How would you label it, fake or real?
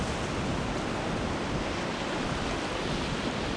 real